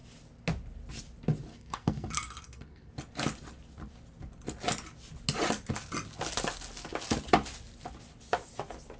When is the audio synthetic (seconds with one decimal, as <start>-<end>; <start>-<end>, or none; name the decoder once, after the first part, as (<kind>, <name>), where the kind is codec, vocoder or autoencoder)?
1.5-2.9 (codec, SNAC)